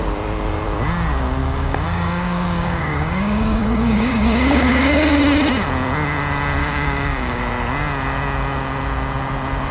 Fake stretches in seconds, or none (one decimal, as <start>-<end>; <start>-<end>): 1.4-5.2; 6.6-7.4